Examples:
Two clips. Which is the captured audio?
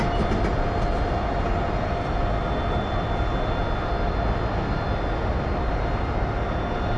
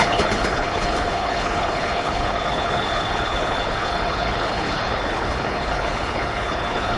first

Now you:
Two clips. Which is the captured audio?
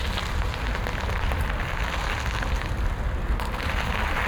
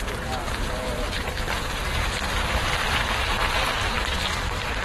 first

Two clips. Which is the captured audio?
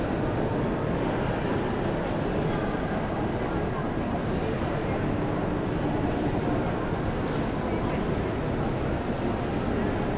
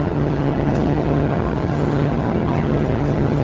first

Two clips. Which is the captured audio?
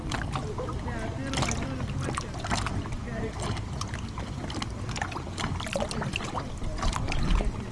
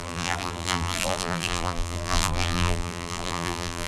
first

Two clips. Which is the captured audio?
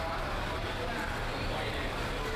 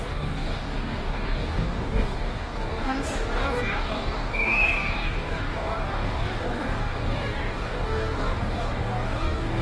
first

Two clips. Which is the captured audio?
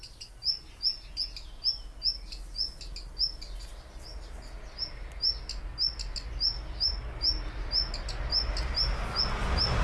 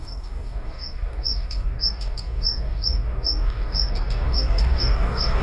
first